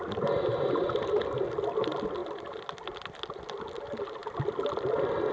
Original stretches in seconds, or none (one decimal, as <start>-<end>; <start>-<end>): 0.0-5.3